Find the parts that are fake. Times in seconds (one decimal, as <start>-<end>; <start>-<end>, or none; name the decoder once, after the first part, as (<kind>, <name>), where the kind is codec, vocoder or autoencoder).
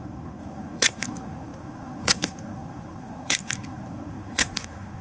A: 0.0-5.0 (codec, SNAC)